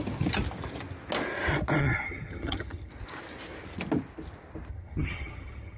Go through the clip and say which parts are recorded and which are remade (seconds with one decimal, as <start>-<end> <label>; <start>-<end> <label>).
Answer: 0.0-1.8 recorded; 1.8-2.9 remade; 2.9-4.7 recorded; 4.7-5.8 remade